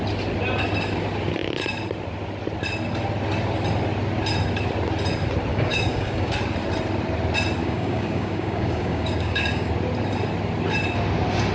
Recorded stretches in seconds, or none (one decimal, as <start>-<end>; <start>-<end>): 0.0-5.5; 6.3-7.6; 9.7-11.5